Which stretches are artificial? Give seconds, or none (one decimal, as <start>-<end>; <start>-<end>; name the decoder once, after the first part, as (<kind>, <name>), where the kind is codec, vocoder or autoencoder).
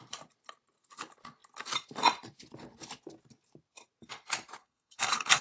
4.6-5.4 (codec, SNAC)